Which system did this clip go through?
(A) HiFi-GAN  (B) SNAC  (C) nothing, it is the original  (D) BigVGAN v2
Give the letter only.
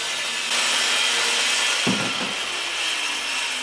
C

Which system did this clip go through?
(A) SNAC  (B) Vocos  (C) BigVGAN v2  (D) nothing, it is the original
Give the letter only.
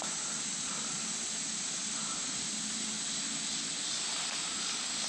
D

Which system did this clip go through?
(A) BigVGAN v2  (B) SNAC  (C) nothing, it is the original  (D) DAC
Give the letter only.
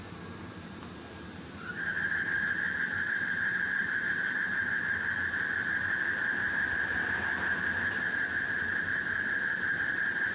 A